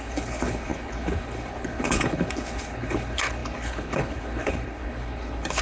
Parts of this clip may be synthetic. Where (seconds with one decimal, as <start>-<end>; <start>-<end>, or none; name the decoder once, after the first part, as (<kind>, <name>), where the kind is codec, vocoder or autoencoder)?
0.0-5.6 (codec, HILCodec)